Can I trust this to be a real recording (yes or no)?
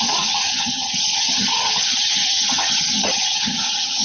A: no